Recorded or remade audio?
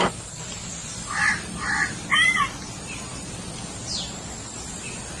recorded